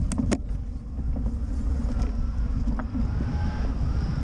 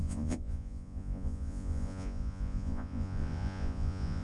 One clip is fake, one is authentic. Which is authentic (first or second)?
first